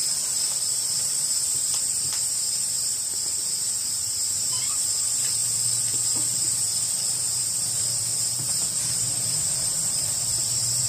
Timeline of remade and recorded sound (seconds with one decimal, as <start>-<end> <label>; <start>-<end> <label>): 0.0-0.7 recorded; 0.7-5.4 remade; 5.4-5.9 recorded; 5.9-10.9 remade